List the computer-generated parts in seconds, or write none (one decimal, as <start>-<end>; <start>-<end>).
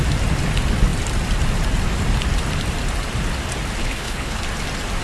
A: 3.8-4.4